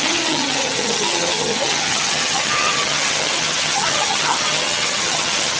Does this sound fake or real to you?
fake